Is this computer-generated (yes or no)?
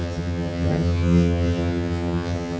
yes